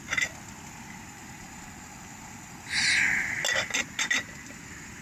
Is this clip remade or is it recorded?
recorded